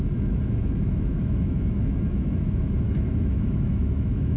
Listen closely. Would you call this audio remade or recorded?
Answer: remade